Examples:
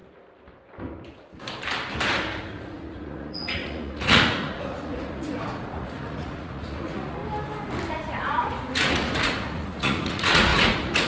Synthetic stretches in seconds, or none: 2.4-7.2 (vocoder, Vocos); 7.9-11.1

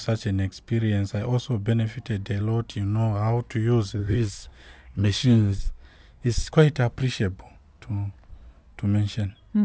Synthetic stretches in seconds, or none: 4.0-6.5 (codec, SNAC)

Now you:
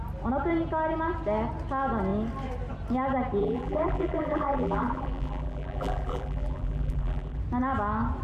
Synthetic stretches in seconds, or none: 3.4-7.4 (vocoder, BigVGAN v2)

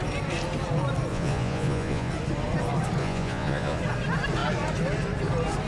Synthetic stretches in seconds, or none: 1.1-2.1 (vocoder, Vocos); 3.0-3.8

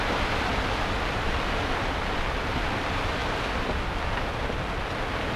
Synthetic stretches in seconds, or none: none

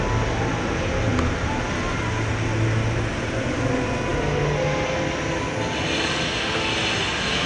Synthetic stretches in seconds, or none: none

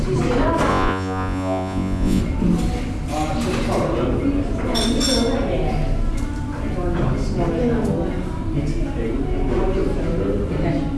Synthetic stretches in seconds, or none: 0.7-2.2 (vocoder, Vocos)